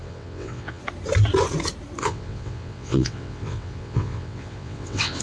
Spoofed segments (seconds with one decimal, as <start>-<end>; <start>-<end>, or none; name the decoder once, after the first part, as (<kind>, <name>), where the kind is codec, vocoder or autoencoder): 0.0-0.8 (vocoder, WaveNeXt); 2.0-5.2